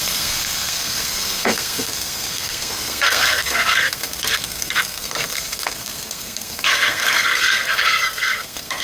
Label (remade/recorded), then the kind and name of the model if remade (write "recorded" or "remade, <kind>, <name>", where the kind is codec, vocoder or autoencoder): remade, codec, SNAC